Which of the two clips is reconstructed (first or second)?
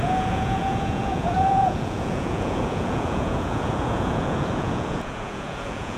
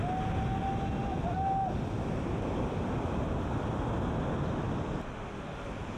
first